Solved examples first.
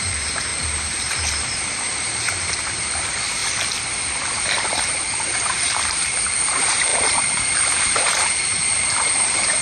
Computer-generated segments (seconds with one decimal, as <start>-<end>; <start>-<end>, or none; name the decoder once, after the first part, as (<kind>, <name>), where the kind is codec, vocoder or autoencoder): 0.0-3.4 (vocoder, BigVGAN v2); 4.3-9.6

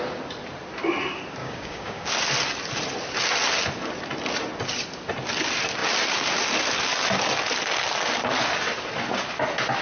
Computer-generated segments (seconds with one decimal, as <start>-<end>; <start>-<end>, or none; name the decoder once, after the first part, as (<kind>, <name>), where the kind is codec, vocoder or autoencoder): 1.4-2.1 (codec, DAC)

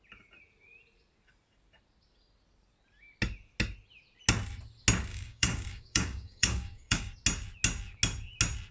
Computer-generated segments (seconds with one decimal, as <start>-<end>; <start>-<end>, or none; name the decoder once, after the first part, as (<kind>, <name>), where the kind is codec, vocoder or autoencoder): 5.1-7.1 (codec, DAC)

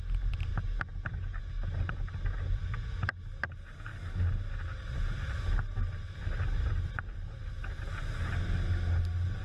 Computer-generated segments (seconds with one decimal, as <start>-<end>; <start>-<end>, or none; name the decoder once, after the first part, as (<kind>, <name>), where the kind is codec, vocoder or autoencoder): none

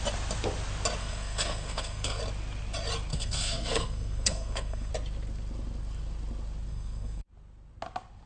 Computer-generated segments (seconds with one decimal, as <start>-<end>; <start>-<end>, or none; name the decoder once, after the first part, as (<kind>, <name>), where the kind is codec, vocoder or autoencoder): 1.0-2.2 (codec, SNAC); 3.1-4.9; 6.7-7.2

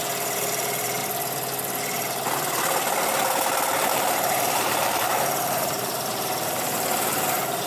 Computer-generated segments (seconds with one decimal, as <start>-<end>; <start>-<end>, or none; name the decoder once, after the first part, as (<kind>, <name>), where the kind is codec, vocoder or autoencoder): 0.0-1.0 (vocoder, BigVGAN v2); 3.9-7.7

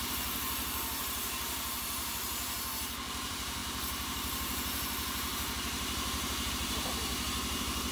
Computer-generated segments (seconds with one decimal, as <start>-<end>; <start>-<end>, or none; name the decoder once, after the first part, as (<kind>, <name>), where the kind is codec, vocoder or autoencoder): 0.0-7.1 (vocoder, BigVGAN v2)